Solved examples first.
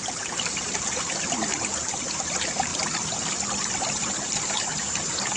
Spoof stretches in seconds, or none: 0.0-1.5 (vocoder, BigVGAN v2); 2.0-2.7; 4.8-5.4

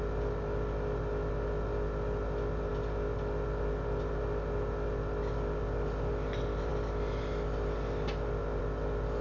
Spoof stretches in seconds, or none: none

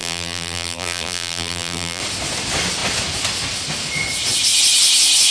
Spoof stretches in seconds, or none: 0.0-2.0 (vocoder, BigVGAN v2)

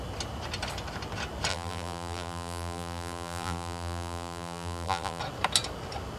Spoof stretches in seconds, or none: 1.5-5.2 (vocoder, BigVGAN v2)

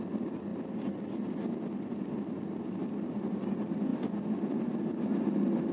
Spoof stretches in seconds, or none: none